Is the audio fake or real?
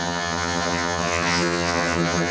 fake